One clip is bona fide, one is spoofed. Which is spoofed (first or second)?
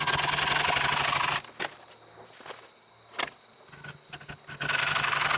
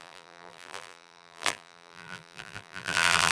second